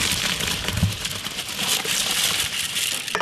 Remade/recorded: recorded